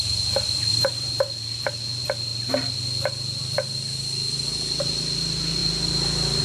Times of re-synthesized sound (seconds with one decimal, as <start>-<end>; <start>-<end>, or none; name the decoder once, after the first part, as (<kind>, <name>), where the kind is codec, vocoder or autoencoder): 0.7-1.2 (vocoder, BigVGAN v2)